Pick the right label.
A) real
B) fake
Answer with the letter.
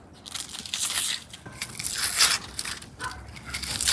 A